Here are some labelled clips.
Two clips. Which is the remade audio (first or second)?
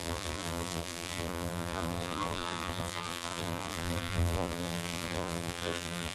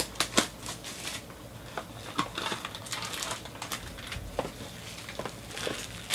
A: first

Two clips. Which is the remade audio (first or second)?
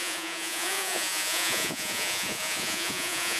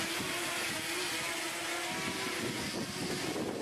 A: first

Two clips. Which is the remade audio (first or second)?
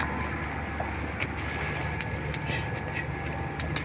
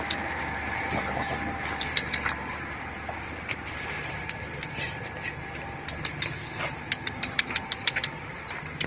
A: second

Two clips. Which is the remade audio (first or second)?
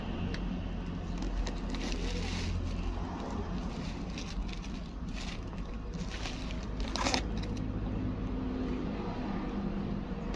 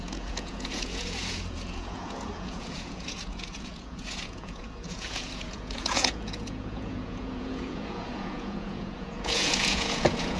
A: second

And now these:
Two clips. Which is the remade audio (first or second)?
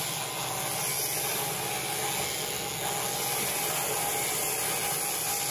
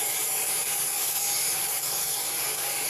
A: second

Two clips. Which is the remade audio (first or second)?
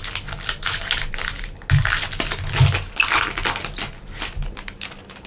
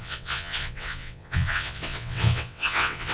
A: second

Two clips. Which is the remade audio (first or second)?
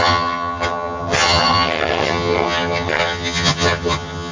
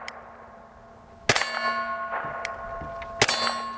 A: first